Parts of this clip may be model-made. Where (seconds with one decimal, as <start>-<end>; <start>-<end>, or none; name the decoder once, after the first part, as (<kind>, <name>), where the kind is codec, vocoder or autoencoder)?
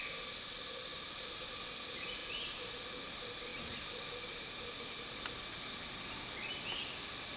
0.9-1.6 (vocoder, BigVGAN v2); 2.2-2.7